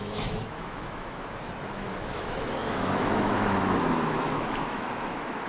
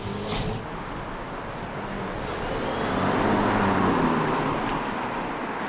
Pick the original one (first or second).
second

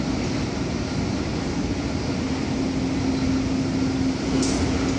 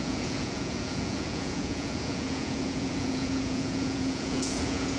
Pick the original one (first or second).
first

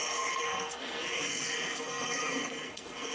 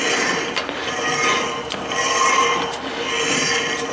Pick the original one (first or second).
second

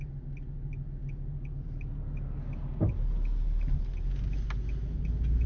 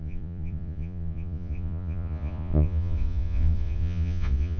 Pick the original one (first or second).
first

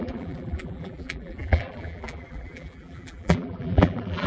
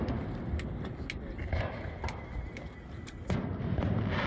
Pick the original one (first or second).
second